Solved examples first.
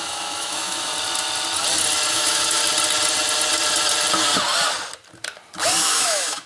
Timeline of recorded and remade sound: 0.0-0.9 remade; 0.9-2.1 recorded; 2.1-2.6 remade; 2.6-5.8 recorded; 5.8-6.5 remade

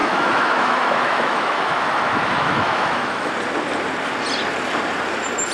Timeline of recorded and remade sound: 0.0-3.3 remade; 3.3-5.5 recorded

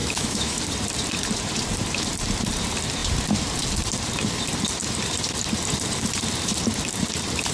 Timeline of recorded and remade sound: 0.0-0.6 remade; 0.6-7.5 recorded

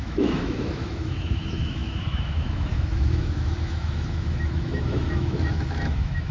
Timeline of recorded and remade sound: 0.0-6.3 remade

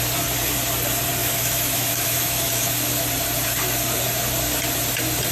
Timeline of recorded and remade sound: 0.0-1.2 recorded; 1.2-3.0 remade; 3.0-5.3 recorded